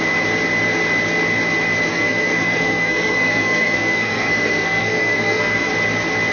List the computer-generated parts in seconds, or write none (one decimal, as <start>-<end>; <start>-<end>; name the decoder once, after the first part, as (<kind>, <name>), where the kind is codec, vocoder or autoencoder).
1.9-5.7 (codec, SNAC)